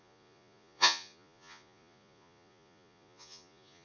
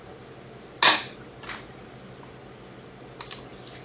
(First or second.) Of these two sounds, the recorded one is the second